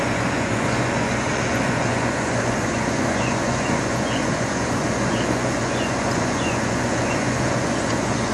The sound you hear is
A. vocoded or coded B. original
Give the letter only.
A